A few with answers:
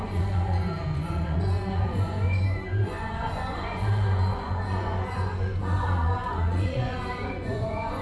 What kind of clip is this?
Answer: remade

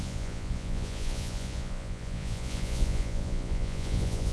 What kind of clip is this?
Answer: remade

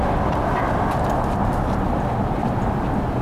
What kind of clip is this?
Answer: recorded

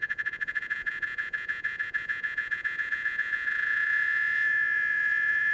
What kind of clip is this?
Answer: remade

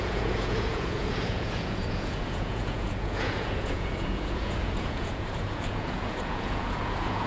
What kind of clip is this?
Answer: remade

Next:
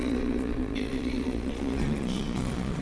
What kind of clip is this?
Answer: remade